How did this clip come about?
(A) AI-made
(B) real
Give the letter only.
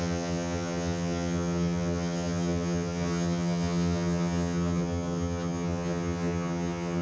A